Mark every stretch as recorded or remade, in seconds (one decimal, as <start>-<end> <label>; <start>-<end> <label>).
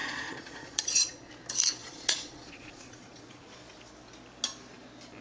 0.0-1.3 remade; 1.3-1.8 recorded; 1.8-3.6 remade; 3.6-5.2 recorded